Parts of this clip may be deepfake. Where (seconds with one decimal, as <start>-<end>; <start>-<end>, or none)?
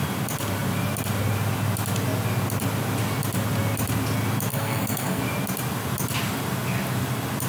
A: 4.5-5.2